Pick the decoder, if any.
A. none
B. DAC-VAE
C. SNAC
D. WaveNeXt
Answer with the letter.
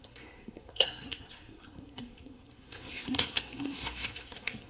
C